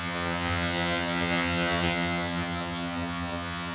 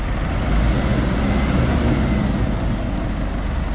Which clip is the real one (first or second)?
second